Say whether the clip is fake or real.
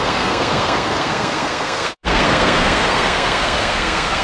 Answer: fake